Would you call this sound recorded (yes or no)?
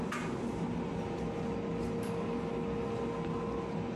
yes